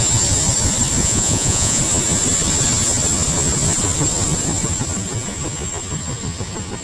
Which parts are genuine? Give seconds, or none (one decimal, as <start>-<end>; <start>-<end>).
0.0-1.0; 1.8-6.8